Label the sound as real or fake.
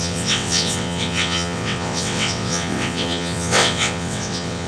fake